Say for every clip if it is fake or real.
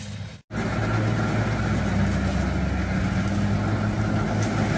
real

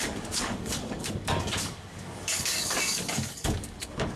fake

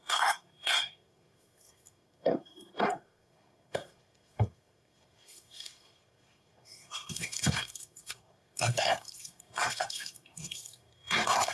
fake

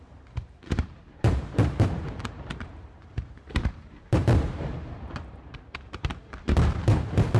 fake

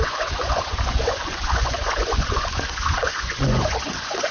fake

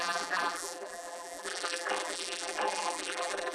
fake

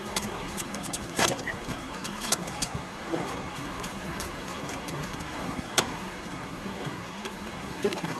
fake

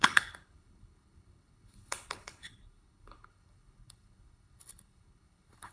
fake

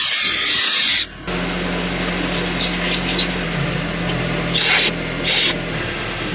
real